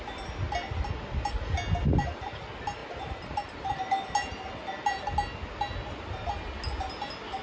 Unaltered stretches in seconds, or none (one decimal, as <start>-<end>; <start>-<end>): 0.0-7.4